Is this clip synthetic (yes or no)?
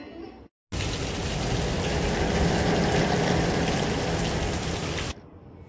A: no